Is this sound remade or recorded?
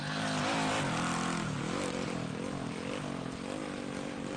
recorded